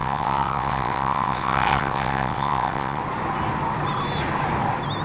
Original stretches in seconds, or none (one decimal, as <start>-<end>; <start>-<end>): 3.0-5.0